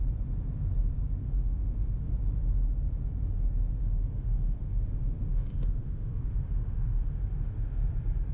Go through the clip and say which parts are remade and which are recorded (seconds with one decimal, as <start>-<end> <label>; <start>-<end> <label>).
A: 0.0-1.2 recorded; 1.2-2.1 remade; 2.1-3.8 recorded; 3.8-7.9 remade; 7.9-8.3 recorded